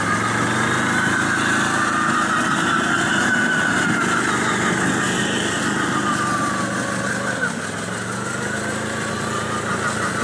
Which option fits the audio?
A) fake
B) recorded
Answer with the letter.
B